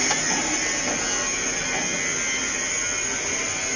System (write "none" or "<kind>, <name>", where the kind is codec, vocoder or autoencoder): none